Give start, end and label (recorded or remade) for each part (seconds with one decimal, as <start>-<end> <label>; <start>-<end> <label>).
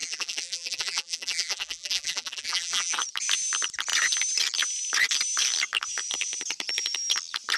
0.0-3.0 remade; 3.0-7.6 recorded